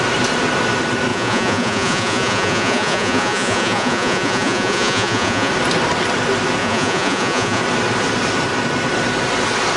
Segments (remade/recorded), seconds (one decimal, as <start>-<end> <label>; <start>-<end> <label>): 0.0-1.1 recorded; 1.1-5.5 remade; 5.5-6.6 recorded; 6.6-7.6 remade; 7.6-9.8 recorded